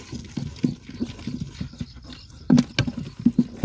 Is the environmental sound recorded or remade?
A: recorded